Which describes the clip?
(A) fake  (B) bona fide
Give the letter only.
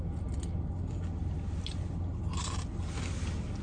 B